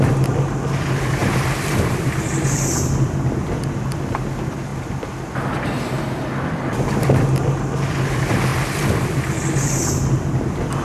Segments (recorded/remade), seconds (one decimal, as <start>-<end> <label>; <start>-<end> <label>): 0.0-1.2 recorded; 1.2-2.1 remade; 2.1-10.8 recorded